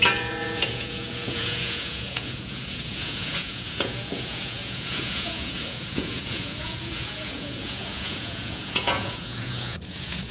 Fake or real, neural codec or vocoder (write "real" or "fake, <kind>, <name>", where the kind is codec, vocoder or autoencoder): fake, vocoder, Vocos